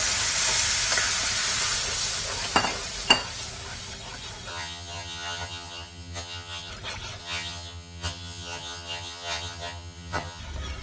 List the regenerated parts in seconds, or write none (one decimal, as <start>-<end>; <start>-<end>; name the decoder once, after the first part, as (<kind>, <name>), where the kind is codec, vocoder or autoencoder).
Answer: 4.5-6.7 (vocoder, HiFi-GAN); 7.2-10.4